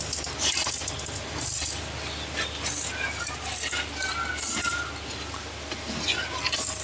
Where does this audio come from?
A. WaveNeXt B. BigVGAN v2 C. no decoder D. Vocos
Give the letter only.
C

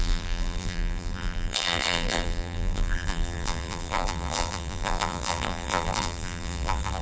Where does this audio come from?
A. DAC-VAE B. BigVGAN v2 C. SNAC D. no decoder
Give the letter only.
B